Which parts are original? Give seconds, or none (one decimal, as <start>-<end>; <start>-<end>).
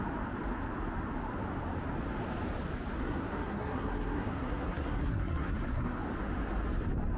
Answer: 0.0-3.0; 6.0-7.2